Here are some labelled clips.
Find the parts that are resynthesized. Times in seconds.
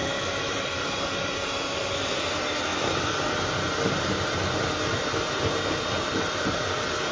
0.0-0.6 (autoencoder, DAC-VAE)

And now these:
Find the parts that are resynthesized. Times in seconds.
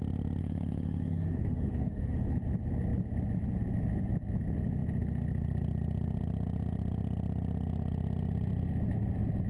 0.4-2.3 (autoencoder, DAC-VAE)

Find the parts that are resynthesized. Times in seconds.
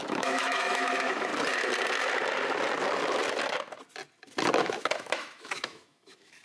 0.0-1.3 (autoencoder, DAC-VAE); 4.6-6.4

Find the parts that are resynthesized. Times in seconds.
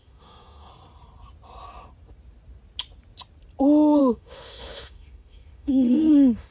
0.0-0.7 (autoencoder, DAC-VAE); 4.0-6.5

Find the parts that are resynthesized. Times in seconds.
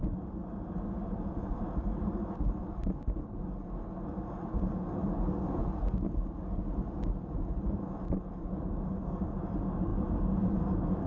none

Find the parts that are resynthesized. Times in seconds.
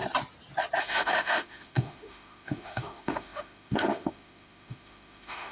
0.8-5.5 (autoencoder, DAC-VAE)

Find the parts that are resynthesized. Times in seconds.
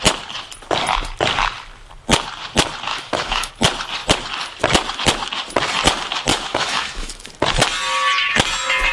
2.9-3.5 (autoencoder, DAC-VAE); 6.3-7.3